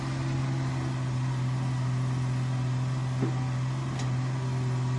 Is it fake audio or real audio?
real